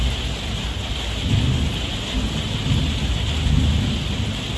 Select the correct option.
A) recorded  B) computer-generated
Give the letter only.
A